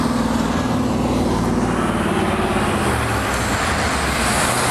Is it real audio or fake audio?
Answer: real